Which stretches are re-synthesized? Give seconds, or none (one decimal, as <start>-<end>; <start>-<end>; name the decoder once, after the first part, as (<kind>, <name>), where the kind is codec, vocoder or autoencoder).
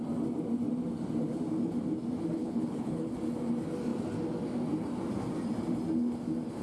2.4-3.1 (codec, HILCodec)